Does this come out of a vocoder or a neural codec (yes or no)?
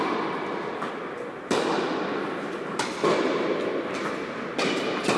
no